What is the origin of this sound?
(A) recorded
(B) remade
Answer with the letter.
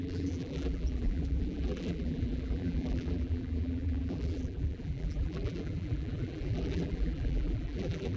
B